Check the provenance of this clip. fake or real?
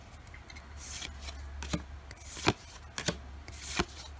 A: real